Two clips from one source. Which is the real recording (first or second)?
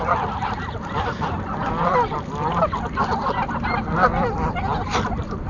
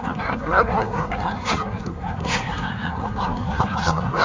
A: first